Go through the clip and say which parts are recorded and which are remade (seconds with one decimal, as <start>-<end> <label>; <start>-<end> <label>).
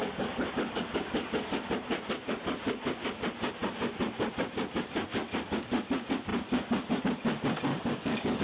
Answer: 0.0-0.5 remade; 0.5-7.7 recorded; 7.7-8.4 remade